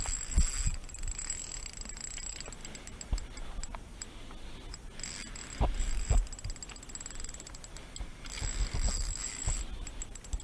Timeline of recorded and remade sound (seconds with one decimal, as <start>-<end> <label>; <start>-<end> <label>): 0.0-10.4 recorded